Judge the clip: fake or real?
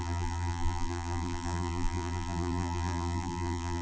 fake